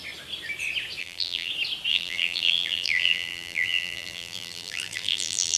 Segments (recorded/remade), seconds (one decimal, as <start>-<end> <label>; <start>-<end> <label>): 0.0-1.0 recorded; 1.0-1.5 remade; 1.5-1.9 recorded; 1.9-5.6 remade